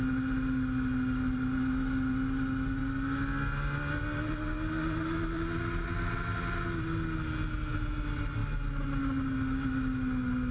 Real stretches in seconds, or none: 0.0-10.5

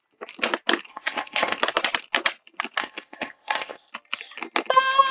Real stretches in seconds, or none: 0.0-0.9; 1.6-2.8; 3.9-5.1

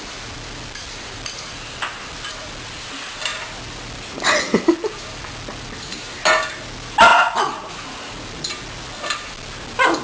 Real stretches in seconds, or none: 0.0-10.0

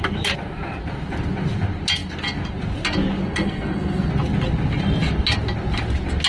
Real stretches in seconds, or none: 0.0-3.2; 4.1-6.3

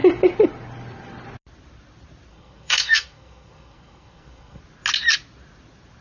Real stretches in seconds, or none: 0.0-2.3; 4.6-6.0

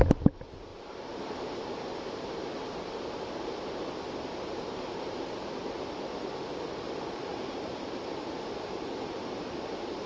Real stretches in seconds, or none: 0.0-0.7; 5.8-7.3; 9.7-10.1

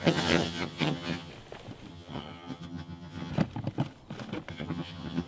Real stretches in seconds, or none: 1.3-1.9; 3.3-4.5